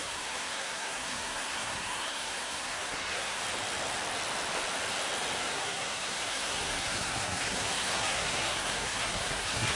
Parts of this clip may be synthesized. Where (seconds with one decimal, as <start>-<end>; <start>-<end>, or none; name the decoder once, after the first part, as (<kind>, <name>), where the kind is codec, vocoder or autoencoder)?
0.0-3.4 (codec, SNAC); 5.4-9.8